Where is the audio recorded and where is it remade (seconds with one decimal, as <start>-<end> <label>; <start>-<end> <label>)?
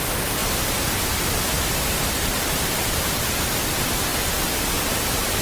0.0-0.4 recorded; 0.4-3.6 remade; 3.6-5.4 recorded